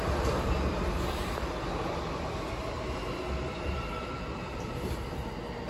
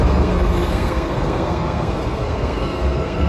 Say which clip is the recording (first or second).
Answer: first